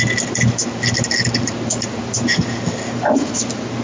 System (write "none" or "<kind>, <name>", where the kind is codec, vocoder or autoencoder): none